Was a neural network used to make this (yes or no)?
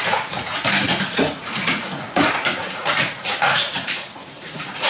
yes